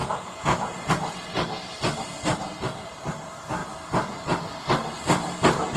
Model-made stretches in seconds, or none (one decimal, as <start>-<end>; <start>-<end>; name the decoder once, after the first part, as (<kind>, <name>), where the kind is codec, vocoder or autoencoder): 0.0-0.9 (vocoder, Vocos)